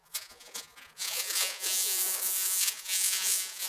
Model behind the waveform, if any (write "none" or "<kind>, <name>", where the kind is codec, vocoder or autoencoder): vocoder, Vocos